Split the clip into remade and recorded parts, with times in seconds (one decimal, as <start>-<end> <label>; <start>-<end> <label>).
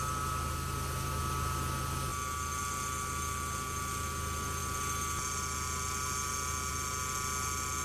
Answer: 0.0-7.8 recorded